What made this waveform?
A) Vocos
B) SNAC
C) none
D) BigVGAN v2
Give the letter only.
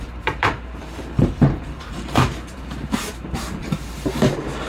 D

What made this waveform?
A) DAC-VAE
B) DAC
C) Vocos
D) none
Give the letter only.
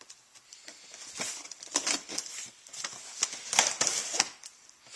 D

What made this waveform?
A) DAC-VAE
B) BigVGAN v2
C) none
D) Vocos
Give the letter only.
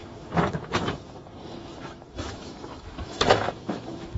A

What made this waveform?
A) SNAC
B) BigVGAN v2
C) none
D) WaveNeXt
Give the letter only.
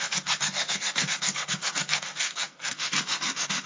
A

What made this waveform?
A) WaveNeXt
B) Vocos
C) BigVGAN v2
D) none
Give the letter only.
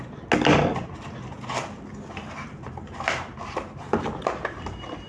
D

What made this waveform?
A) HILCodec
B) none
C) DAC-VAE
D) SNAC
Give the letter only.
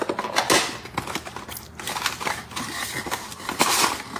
B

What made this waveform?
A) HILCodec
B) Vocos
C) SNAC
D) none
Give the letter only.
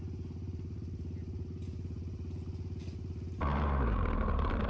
D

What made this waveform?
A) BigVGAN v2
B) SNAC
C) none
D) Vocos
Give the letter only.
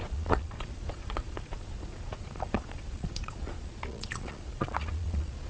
D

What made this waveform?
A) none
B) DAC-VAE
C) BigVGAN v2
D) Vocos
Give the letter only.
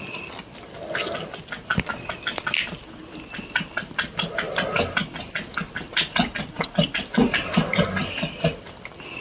A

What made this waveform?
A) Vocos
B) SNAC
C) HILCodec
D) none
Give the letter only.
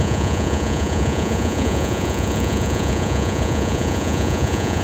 A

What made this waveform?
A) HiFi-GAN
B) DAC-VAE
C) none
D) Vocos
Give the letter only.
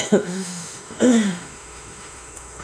B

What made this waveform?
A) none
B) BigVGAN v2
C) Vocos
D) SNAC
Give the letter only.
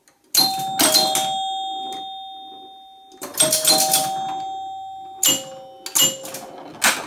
A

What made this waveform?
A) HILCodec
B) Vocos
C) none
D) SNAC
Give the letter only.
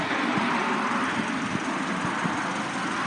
C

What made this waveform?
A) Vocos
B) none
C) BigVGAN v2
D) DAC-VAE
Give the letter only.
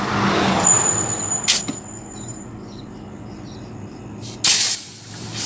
B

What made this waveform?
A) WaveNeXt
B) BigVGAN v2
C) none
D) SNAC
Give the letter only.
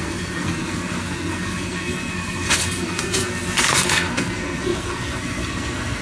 D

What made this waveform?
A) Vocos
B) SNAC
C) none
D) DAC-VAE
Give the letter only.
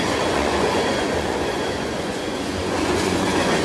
A